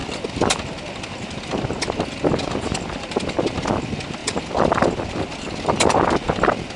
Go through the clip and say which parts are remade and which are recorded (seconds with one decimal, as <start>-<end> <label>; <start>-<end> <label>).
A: 0.0-2.4 recorded; 2.4-2.9 remade; 2.9-4.2 recorded; 4.2-5.2 remade; 5.2-6.8 recorded